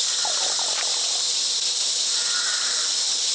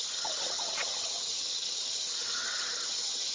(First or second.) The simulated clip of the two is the second